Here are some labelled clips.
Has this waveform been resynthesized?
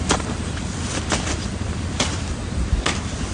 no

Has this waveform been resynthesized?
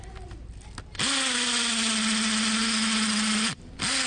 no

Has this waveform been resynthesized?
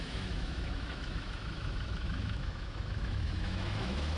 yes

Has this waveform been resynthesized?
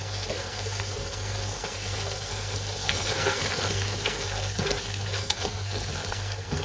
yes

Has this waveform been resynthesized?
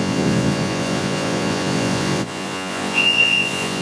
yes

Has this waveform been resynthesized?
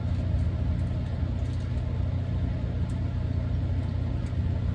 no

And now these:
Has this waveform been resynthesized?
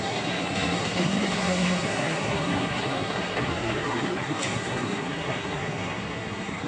yes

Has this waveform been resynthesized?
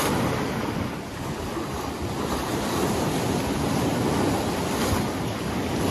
no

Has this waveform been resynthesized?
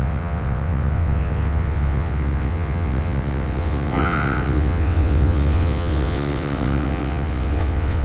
yes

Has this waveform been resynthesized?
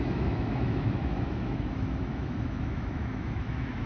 yes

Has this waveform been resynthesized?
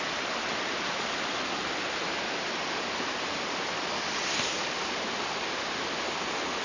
no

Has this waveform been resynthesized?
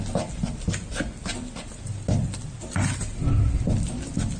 no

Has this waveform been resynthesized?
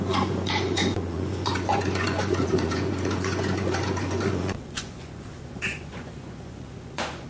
yes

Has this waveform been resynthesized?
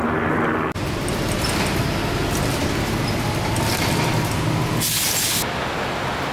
no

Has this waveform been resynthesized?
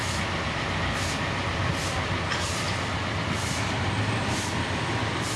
no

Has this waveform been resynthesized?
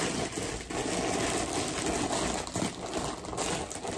no